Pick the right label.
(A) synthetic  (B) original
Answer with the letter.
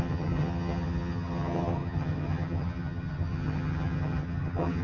A